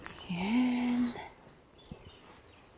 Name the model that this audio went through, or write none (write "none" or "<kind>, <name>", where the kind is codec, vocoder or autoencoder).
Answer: none